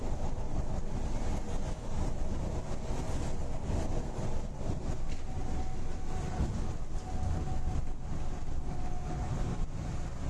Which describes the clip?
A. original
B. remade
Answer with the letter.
A